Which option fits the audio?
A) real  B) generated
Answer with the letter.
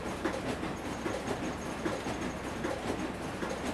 A